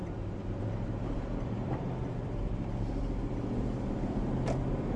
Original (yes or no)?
no